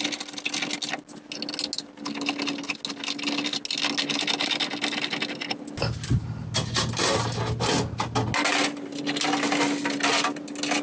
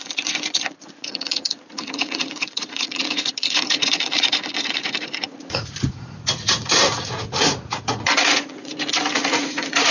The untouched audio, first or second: first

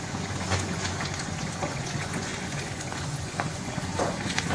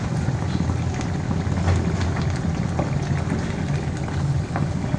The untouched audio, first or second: second